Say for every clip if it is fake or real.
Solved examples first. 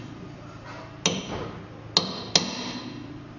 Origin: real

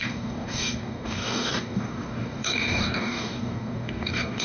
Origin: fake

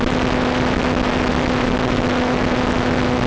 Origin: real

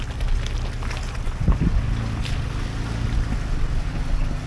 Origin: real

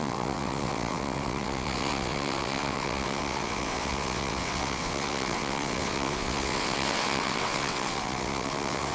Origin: fake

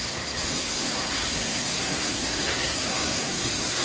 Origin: fake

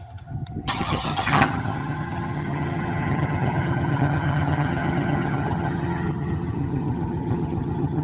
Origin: fake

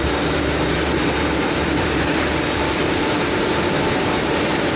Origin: fake